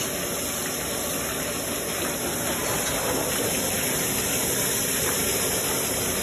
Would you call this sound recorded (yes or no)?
yes